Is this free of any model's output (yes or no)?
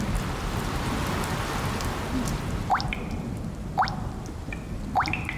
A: yes